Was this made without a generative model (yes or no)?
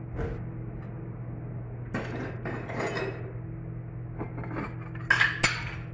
yes